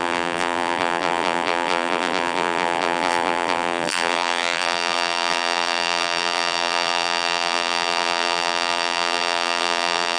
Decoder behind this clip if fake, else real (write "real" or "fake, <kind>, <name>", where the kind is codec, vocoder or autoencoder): fake, vocoder, BigVGAN v2